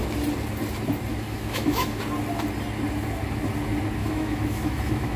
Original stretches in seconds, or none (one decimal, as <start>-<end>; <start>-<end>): 0.0-1.1; 2.0-4.0